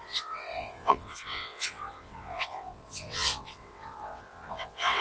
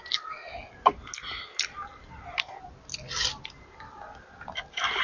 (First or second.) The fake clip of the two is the first